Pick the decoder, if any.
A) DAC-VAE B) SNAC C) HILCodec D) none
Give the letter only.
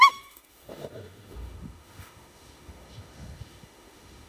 A